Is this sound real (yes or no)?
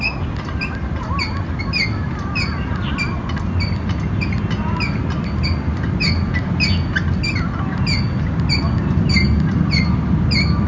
yes